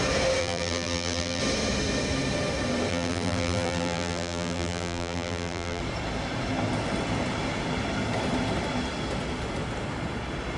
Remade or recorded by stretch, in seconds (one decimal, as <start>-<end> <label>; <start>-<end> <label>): 0.0-0.4 recorded; 0.4-1.4 remade; 1.4-2.9 recorded; 2.9-5.8 remade; 5.8-10.6 recorded